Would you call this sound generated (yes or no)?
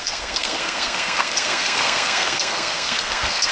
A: yes